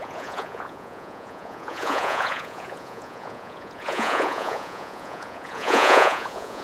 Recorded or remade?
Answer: remade